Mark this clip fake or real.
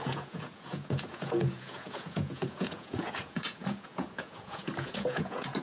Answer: fake